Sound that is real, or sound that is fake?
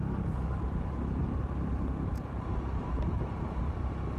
real